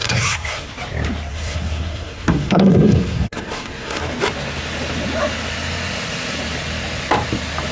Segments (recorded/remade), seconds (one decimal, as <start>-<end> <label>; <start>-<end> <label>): 0.0-0.7 remade; 0.7-1.3 recorded; 1.3-4.0 remade; 4.0-7.7 recorded